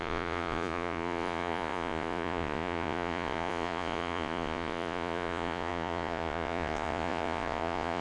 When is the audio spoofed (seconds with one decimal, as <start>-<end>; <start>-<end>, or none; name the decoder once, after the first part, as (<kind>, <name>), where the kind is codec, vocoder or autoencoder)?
0.0-8.0 (vocoder, Vocos)